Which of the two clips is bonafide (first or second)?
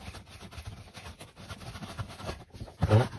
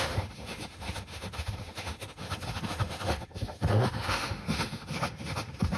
first